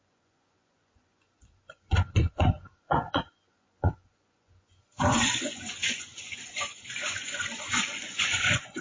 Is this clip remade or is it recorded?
remade